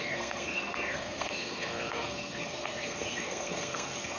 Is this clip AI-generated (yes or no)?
yes